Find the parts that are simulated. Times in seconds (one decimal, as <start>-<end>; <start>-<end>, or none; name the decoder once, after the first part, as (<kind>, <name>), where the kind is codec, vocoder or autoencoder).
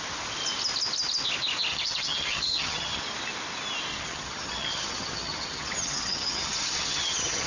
1.7-3.0 (vocoder, HiFi-GAN); 3.9-7.5